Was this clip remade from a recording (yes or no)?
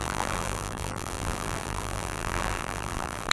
yes